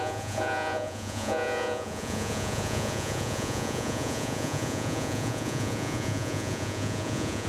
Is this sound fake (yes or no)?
yes